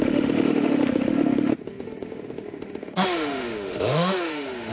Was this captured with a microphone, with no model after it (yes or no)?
no